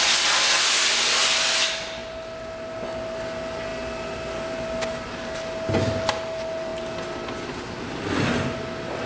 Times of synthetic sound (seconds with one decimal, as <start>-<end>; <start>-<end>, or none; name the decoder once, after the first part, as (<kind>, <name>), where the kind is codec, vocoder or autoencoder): none